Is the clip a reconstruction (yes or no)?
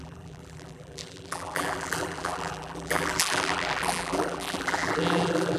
yes